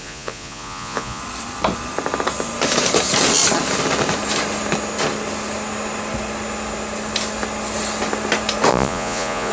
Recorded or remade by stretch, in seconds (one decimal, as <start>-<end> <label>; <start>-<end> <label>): 0.0-1.2 remade; 1.2-8.7 recorded; 8.7-9.5 remade